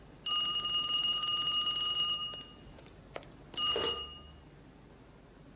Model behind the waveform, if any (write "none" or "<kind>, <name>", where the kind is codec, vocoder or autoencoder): none